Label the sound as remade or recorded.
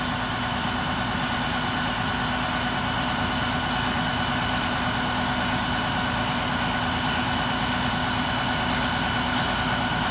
recorded